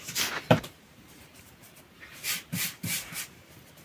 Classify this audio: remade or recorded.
remade